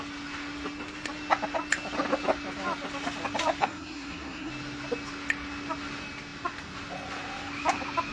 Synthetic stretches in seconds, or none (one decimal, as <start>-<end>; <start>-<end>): 3.6-4.5